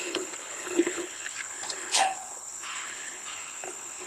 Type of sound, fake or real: fake